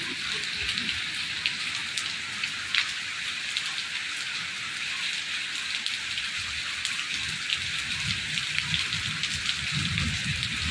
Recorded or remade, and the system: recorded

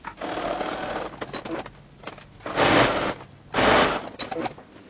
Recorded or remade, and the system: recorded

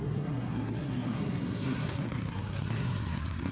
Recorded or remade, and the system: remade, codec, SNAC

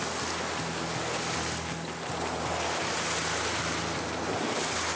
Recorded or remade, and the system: recorded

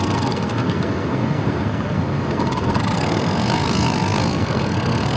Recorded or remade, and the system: remade, codec, SNAC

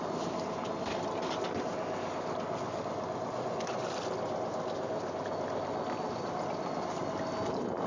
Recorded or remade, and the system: recorded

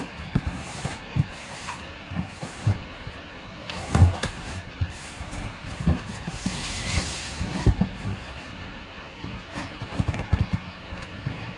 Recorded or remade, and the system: remade, codec, SNAC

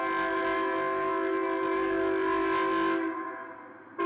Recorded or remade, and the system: recorded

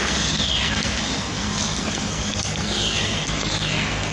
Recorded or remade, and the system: remade, codec, SNAC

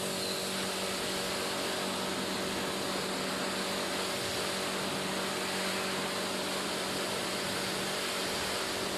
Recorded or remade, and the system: recorded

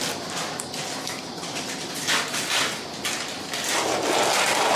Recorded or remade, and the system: recorded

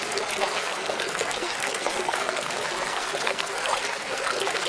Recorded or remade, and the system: remade, codec, SNAC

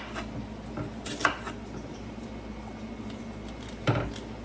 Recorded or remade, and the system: recorded